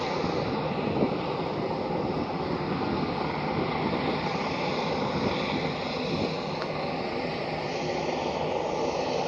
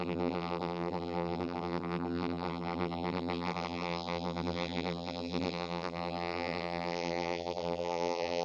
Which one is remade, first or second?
second